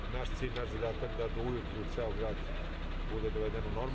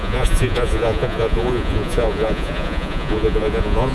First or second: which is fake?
second